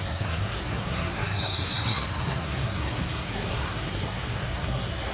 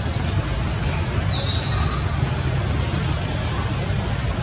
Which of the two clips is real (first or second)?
second